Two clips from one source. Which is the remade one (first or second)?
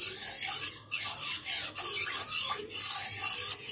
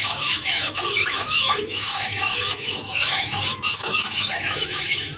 second